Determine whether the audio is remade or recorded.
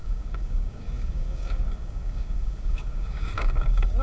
remade